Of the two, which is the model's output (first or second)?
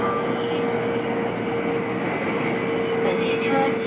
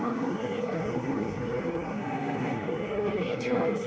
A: second